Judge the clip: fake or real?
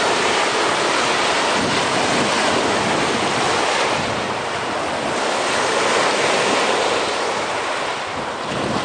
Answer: real